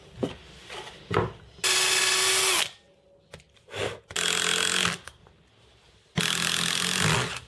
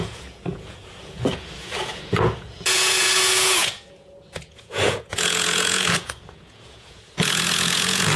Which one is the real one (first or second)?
first